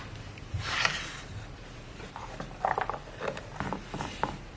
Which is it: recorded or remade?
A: remade